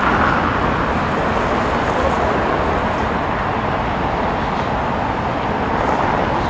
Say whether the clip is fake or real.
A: real